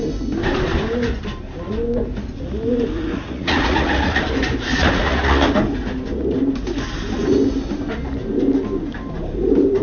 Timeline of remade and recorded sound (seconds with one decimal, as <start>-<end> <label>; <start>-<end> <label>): 0.0-3.1 recorded; 3.1-4.2 remade; 4.2-4.7 recorded; 4.7-5.6 remade; 5.6-9.8 recorded